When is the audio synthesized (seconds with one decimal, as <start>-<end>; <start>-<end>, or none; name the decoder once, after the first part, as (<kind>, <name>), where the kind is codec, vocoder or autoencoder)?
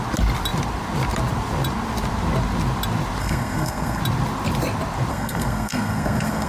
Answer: 3.2-4.0 (codec, SNAC); 5.1-6.5